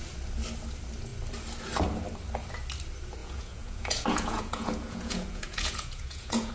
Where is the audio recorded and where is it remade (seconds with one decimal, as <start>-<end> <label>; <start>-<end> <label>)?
0.0-3.2 recorded; 3.2-6.5 remade